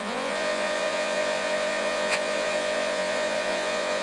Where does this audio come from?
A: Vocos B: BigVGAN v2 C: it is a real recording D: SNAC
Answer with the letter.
A